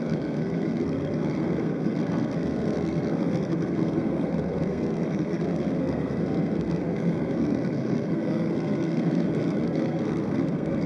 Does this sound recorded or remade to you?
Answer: remade